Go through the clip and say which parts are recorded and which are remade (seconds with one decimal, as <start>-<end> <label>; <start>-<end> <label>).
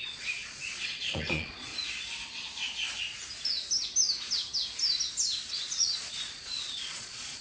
0.0-1.7 remade; 1.7-5.5 recorded; 5.5-7.4 remade